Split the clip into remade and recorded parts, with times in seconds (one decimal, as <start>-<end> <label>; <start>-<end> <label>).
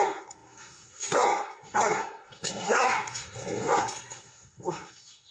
0.0-5.3 remade